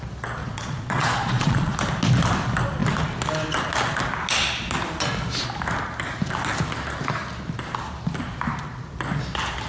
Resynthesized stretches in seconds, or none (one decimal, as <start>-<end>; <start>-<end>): 0.4-1.7